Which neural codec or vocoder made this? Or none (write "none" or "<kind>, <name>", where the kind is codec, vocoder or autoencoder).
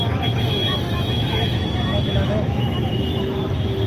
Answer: autoencoder, DAC-VAE